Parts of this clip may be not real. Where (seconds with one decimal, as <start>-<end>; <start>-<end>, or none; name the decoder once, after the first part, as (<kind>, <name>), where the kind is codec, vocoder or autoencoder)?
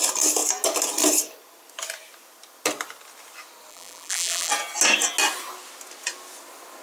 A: 3.7-4.5 (vocoder, BigVGAN v2)